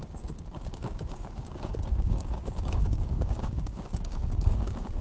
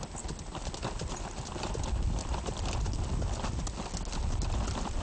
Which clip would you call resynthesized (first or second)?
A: first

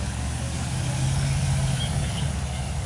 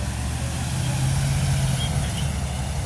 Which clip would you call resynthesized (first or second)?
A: first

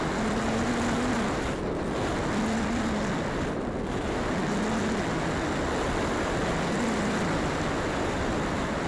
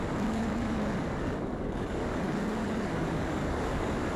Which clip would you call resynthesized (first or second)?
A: second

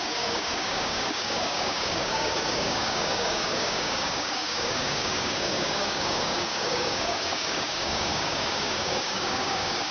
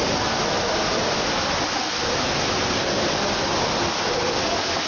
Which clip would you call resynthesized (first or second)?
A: first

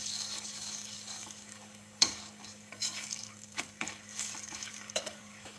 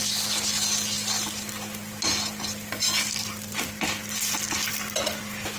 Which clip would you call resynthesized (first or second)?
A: first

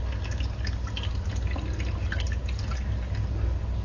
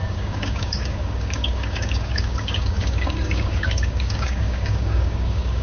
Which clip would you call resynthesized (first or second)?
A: second